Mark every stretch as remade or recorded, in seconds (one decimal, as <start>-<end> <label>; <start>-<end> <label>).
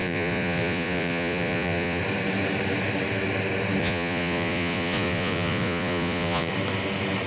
0.0-2.0 remade; 2.0-3.8 recorded; 3.8-6.5 remade; 6.5-7.3 recorded